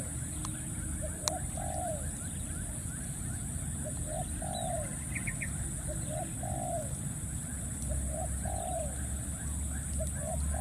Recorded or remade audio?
recorded